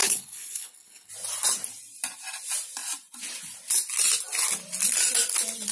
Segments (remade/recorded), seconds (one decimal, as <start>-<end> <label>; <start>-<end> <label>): 0.0-1.1 remade; 1.1-5.7 recorded